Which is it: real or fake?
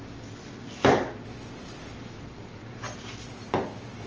real